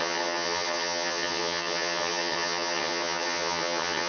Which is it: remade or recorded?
remade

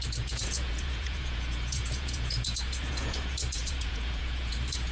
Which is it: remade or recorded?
remade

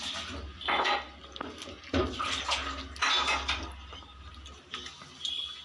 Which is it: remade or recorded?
recorded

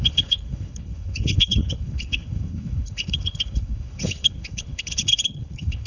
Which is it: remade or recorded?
remade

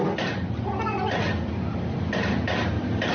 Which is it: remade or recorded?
recorded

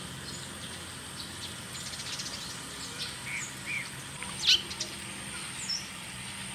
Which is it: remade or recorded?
recorded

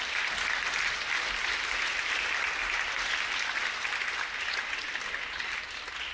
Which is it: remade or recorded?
recorded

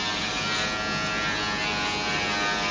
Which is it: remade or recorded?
recorded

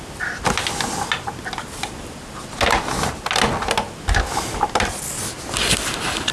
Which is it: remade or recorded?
recorded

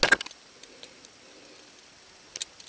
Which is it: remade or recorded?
recorded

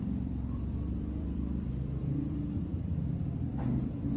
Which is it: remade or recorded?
remade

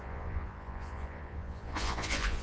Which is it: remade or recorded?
remade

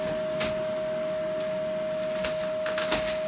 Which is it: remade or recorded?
recorded